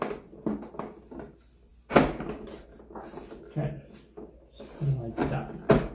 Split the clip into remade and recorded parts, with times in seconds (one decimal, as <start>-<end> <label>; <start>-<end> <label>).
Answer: 0.0-5.9 recorded